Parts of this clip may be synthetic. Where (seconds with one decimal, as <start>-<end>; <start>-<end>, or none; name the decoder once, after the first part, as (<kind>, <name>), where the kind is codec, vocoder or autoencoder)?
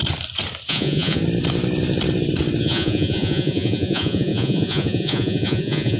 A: 0.7-1.2 (vocoder, Vocos); 2.6-6.0